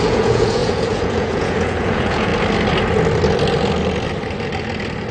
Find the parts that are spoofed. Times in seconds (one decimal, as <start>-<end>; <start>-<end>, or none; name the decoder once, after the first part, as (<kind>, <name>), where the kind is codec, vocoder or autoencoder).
0.0-2.3 (vocoder, Vocos)